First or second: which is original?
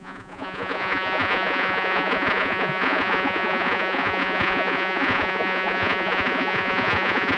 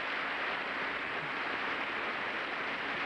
second